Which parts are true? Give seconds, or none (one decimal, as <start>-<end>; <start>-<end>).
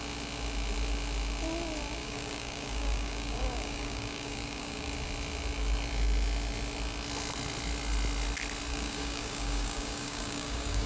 0.0-2.0; 4.9-8.7